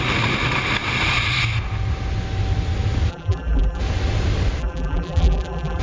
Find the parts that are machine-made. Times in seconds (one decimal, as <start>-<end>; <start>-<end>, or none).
3.1-3.8; 4.6-5.8